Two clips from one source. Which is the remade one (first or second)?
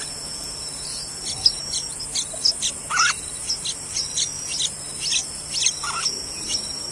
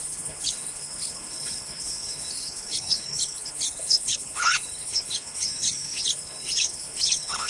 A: second